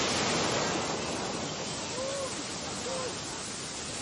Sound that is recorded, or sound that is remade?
recorded